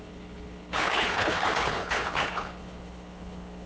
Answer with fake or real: fake